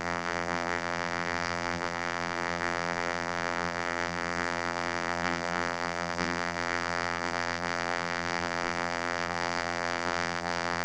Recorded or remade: remade